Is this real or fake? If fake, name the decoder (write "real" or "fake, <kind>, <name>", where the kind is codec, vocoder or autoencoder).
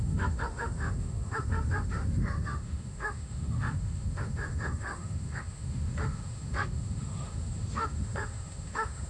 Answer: fake, autoencoder, DAC-VAE